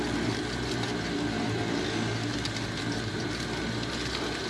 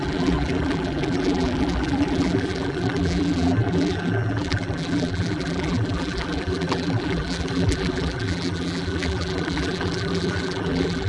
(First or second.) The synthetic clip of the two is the second